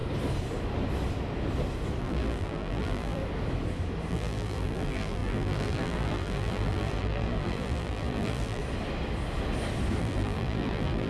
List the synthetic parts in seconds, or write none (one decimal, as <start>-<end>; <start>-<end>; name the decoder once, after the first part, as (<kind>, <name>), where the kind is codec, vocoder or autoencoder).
2.0-3.2 (vocoder, BigVGAN v2); 4.1-8.6; 10.0-11.1